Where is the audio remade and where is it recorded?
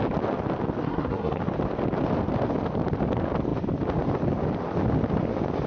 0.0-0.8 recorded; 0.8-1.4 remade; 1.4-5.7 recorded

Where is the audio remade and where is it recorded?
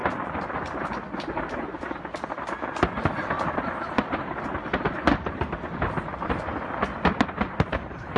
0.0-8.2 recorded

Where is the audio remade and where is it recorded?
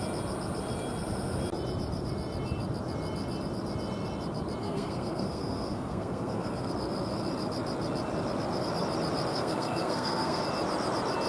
0.0-4.6 recorded; 4.6-6.7 remade; 6.7-9.3 recorded; 9.3-10.4 remade; 10.4-11.3 recorded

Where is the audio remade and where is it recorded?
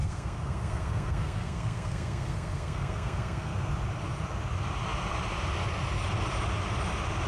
0.0-3.7 remade; 3.7-7.3 recorded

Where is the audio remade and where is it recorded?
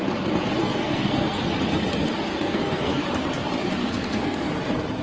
0.0-0.6 recorded; 0.6-1.4 remade; 1.4-2.3 recorded; 2.3-3.0 remade; 3.0-3.8 recorded; 3.8-4.5 remade; 4.5-5.0 recorded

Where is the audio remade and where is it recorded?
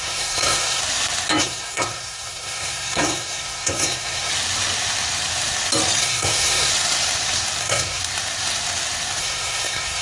0.0-0.8 remade; 0.8-1.4 recorded; 1.4-4.3 remade; 4.3-6.0 recorded; 6.0-6.7 remade; 6.7-7.6 recorded; 7.6-8.0 remade; 8.0-9.2 recorded; 9.2-10.0 remade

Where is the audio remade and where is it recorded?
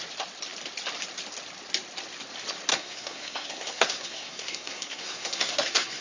0.0-2.7 recorded; 2.7-6.0 remade